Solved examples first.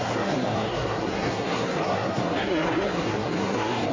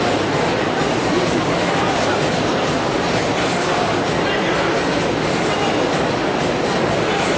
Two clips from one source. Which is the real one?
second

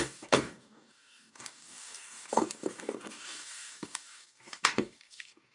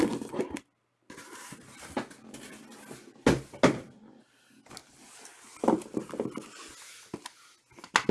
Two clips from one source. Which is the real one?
second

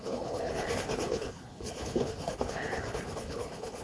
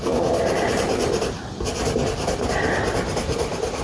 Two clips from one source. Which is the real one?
second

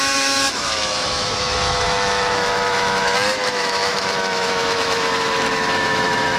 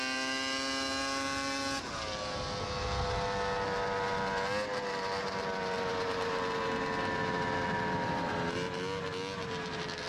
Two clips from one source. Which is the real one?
second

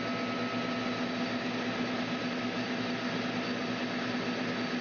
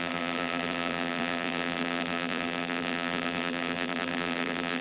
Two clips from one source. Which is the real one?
first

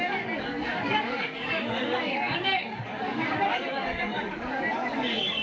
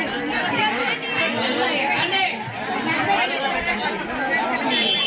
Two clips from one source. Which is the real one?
second